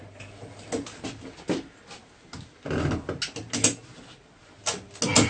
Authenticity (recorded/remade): recorded